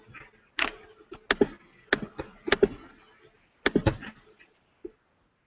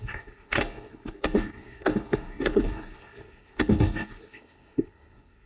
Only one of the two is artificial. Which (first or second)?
second